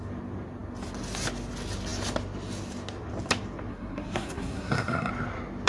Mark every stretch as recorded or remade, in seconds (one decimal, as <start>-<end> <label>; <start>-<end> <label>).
0.0-3.7 recorded; 3.7-5.1 remade; 5.1-5.7 recorded